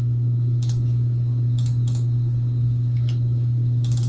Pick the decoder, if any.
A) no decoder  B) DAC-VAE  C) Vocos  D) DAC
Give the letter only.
D